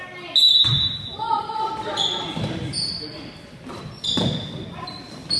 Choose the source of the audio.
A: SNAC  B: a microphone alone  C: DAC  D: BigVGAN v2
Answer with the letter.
B